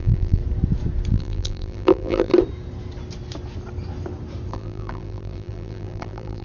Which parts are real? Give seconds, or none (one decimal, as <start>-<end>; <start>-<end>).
0.4-1.1; 2.3-4.5